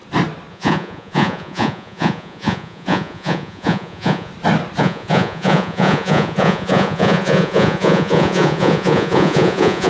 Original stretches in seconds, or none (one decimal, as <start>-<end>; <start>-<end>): 0.0-0.5; 4.3-4.8